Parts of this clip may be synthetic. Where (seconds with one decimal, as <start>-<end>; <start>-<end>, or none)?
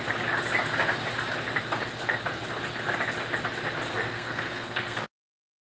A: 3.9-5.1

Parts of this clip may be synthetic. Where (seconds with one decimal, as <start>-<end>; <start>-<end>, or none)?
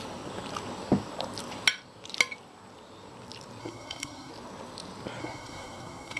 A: 3.6-4.3; 5.2-6.2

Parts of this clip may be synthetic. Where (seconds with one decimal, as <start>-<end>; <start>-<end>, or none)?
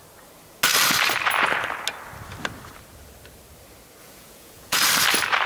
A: 4.0-4.8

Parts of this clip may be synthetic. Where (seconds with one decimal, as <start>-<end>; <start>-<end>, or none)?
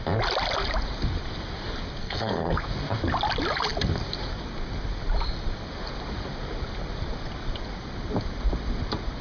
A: 2.0-2.6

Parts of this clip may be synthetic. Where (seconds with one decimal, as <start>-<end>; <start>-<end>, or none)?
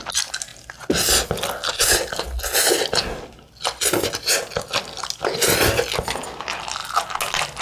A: none